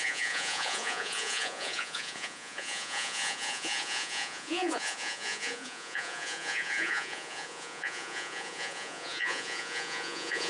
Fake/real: fake